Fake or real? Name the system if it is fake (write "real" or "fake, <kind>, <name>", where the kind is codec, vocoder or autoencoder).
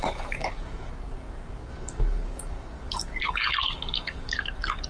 fake, codec, DAC